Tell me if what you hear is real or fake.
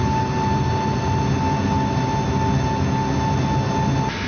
real